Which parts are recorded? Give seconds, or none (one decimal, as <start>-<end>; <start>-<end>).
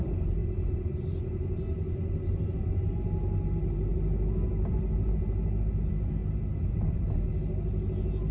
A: 0.0-8.3